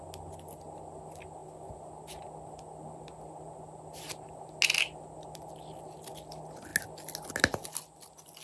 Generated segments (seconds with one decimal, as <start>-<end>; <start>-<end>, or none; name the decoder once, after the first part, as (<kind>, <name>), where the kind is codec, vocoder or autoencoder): none